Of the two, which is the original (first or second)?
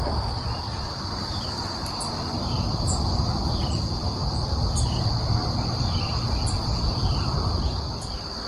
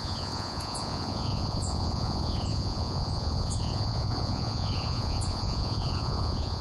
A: first